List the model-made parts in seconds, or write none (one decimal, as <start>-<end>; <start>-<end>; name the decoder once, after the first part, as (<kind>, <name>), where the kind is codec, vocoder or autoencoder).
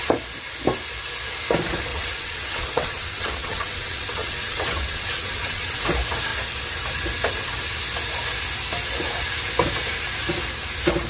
1.9-5.7 (vocoder, WaveNeXt)